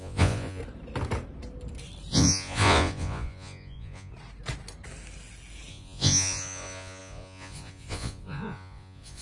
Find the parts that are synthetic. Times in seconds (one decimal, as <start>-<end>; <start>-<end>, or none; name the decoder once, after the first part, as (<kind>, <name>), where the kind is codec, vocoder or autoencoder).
0.0-0.6 (vocoder, Vocos); 2.1-4.1; 5.7-9.2